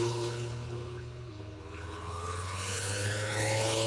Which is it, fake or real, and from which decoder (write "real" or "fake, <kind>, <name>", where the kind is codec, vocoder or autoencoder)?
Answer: fake, codec, HILCodec